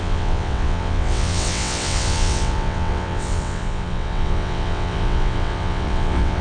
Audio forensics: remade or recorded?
remade